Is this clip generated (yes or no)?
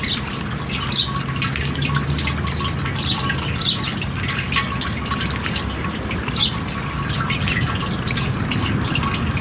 no